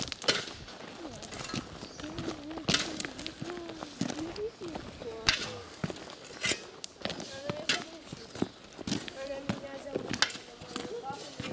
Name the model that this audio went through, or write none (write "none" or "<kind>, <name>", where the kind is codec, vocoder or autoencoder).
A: none